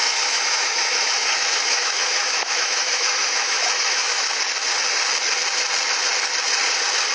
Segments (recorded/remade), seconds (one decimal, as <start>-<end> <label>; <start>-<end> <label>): 0.0-4.3 remade; 4.3-7.1 recorded